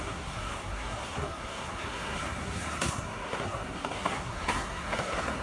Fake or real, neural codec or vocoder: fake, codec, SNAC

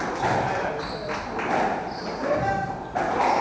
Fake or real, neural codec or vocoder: real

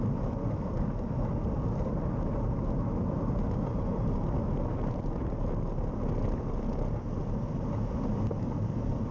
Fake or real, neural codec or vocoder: real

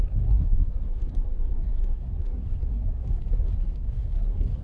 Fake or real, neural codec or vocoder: fake, codec, SNAC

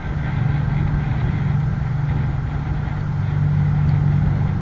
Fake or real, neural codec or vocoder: real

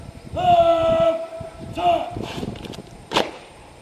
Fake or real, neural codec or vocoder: fake, vocoder, BigVGAN v2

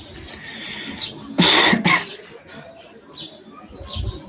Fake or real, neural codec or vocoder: real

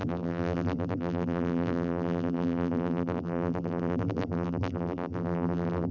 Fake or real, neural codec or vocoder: fake, vocoder, BigVGAN v2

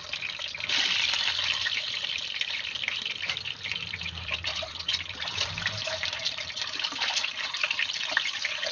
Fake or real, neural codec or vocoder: fake, vocoder, BigVGAN v2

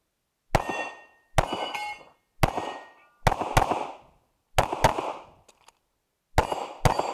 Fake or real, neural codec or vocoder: real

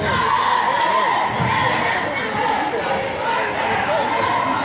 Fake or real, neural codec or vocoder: real